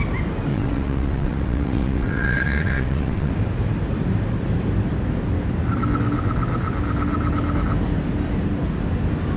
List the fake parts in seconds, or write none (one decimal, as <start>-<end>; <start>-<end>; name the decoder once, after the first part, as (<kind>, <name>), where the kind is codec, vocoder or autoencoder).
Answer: 0.5-3.3 (vocoder, WaveNeXt)